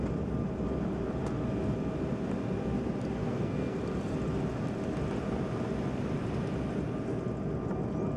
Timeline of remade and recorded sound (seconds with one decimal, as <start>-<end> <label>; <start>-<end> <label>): 0.0-3.2 recorded; 3.2-3.8 remade; 3.8-8.2 recorded

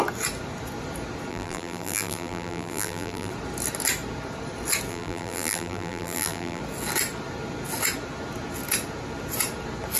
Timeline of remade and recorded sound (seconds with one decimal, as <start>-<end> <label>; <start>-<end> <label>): 0.0-1.3 recorded; 1.3-3.3 remade; 3.3-4.9 recorded; 4.9-6.6 remade; 6.6-10.0 recorded